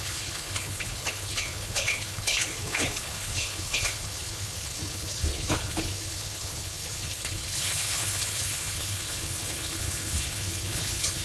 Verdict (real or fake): fake